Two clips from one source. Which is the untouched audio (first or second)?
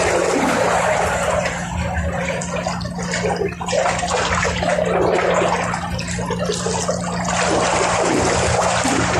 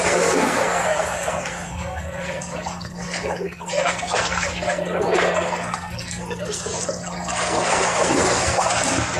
first